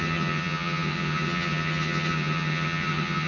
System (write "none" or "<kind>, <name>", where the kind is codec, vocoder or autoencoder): vocoder, HiFi-GAN